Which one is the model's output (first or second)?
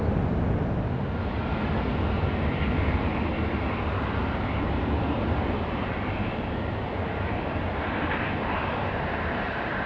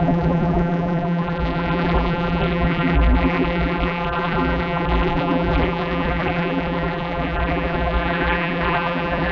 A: second